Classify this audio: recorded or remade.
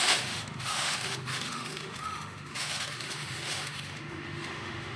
remade